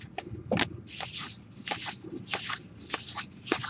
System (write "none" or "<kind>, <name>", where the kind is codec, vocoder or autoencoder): none